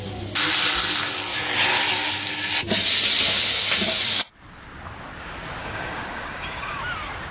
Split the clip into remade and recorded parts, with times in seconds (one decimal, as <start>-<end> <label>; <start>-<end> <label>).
0.0-5.6 recorded; 5.6-6.8 remade; 6.8-7.3 recorded